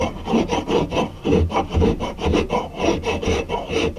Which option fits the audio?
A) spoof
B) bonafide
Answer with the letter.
A